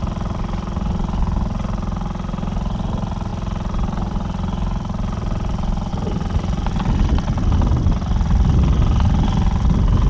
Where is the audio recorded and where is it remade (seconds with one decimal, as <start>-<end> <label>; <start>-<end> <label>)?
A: 0.0-10.1 recorded